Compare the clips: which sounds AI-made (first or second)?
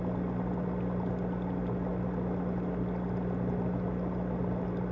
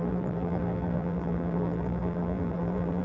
second